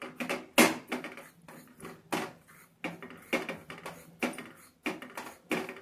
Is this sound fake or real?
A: real